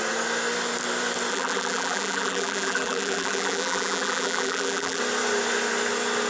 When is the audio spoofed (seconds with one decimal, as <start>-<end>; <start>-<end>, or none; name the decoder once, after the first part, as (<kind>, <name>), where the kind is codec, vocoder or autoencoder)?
1.3-5.0 (vocoder, BigVGAN v2)